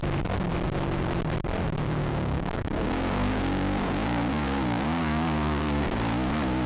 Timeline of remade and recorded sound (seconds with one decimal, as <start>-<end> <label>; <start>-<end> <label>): 0.0-2.0 recorded; 2.0-6.0 remade; 6.0-6.7 recorded

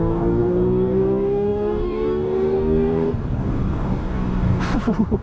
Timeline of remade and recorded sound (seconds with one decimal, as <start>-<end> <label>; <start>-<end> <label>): 0.0-5.2 remade

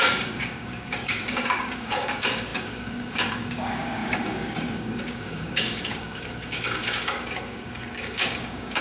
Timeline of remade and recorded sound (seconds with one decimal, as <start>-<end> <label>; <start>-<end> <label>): 0.0-8.8 remade

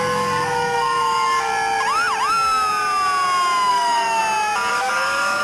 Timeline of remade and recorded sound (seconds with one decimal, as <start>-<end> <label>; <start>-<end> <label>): 0.0-1.5 remade; 1.5-3.7 recorded; 3.7-4.2 remade; 4.2-4.7 recorded; 4.7-5.4 remade